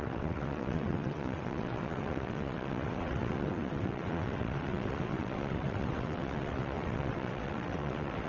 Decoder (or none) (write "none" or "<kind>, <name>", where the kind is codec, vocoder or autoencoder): vocoder, WaveNeXt